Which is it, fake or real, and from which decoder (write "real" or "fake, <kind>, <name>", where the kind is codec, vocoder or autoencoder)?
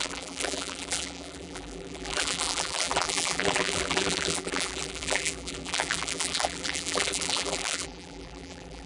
fake, vocoder, BigVGAN v2